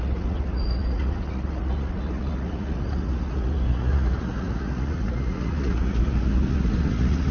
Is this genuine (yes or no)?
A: no